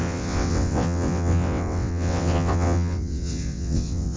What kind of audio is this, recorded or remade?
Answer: remade